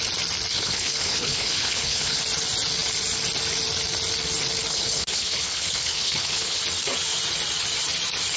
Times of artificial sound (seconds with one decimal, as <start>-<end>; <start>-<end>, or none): 0.5-2.2; 4.7-6.6